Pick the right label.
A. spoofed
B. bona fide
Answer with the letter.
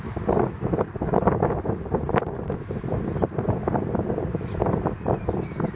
A